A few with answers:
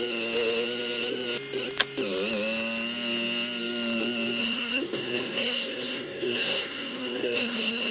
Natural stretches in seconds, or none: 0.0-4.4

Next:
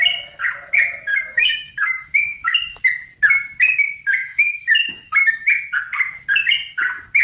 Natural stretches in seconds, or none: 0.0-1.1; 2.8-4.2; 5.5-7.2